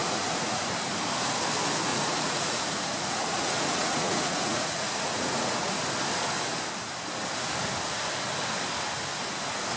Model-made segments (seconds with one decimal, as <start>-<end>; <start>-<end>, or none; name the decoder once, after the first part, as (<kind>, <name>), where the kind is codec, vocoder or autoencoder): 0.0-0.6 (vocoder, Vocos); 1.9-5.7

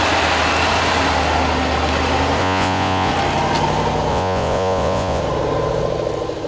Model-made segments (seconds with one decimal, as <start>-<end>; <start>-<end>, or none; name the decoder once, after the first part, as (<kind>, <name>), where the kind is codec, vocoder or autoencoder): 2.4-3.1 (vocoder, Vocos); 4.1-5.2

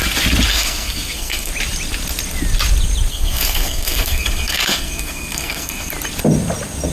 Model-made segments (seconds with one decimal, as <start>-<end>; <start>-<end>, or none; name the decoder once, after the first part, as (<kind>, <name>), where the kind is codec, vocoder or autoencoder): 0.5-1.5 (codec, SNAC); 3.1-5.9

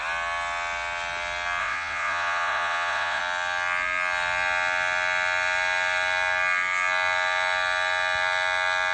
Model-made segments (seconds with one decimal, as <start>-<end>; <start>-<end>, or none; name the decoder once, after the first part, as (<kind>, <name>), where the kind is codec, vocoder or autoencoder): 1.6-3.2 (vocoder, WaveNeXt)

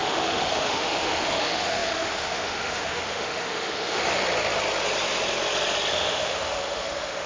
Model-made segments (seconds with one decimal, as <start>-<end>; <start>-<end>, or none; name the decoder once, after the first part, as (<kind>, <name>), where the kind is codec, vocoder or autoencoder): 0.0-4.0 (autoencoder, DAC-VAE); 5.9-7.3

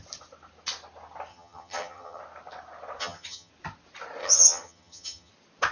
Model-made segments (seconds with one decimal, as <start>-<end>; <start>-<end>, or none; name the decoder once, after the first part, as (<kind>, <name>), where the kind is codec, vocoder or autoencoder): 1.3-2.2 (vocoder, HiFi-GAN); 3.0-3.5; 4.2-5.3

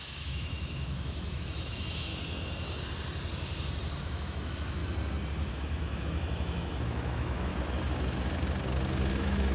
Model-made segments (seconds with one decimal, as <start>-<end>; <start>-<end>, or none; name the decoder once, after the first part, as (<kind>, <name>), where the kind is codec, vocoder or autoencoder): 0.0-2.1 (autoencoder, DAC-VAE); 4.0-4.8; 5.5-7.5; 9.1-9.5

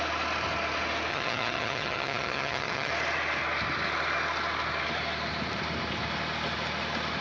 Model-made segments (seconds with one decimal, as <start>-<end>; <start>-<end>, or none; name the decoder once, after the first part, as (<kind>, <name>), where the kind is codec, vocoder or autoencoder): 1.1-2.9 (vocoder, HiFi-GAN)